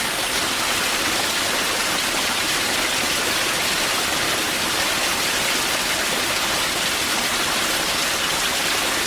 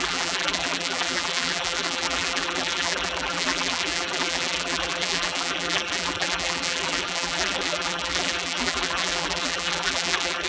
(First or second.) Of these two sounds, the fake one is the second